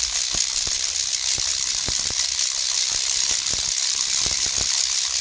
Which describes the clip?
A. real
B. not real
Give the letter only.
A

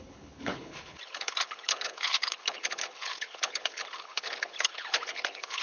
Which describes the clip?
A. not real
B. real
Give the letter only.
A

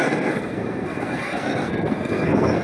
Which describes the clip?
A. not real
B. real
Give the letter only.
A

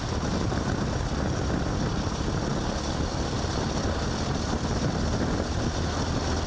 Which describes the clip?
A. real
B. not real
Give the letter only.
A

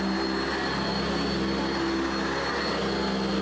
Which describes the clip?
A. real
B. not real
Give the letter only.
A